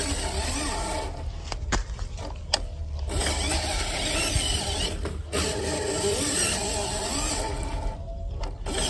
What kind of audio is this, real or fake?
real